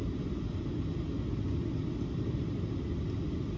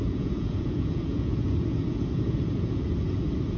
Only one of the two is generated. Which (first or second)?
second